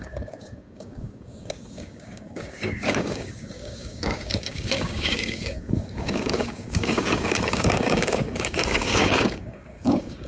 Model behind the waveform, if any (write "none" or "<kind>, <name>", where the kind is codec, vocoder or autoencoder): codec, DAC